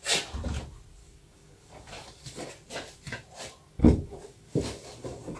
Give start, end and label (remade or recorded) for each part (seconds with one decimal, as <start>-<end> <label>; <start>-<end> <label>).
0.0-1.0 recorded; 1.0-2.5 remade; 2.5-3.8 recorded; 3.8-5.4 remade